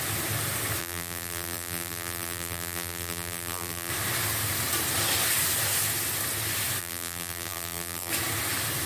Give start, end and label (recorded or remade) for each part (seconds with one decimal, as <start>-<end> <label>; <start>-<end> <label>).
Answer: 0.0-0.8 recorded; 0.8-3.9 remade; 3.9-6.8 recorded; 6.8-8.1 remade; 8.1-8.9 recorded